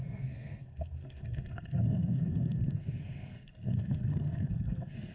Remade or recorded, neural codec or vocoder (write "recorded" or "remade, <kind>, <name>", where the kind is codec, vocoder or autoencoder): remade, codec, SNAC